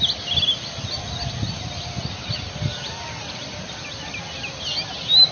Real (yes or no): yes